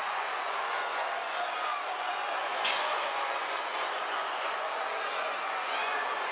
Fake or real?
fake